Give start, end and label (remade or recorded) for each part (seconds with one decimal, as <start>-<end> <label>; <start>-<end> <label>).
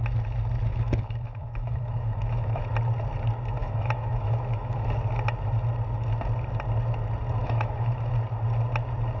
0.0-0.7 recorded; 0.7-2.6 remade; 2.6-3.6 recorded; 3.6-4.9 remade; 4.9-7.4 recorded; 7.4-8.1 remade; 8.1-9.2 recorded